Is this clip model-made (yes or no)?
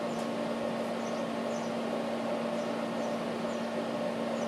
no